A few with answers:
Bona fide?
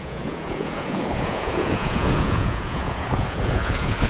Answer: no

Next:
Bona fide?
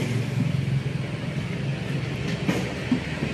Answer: yes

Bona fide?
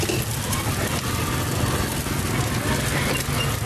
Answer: yes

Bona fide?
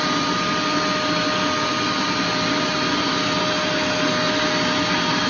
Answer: yes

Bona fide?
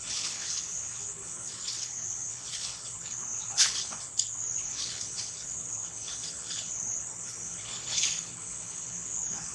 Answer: no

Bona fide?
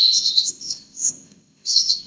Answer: no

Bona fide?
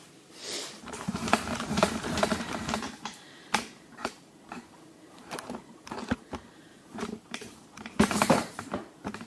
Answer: no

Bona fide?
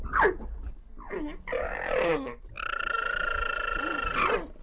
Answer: yes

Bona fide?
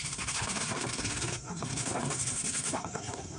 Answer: no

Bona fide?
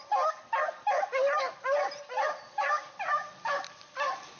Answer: yes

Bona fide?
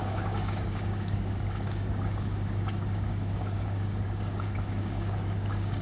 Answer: no